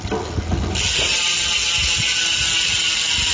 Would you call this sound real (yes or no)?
yes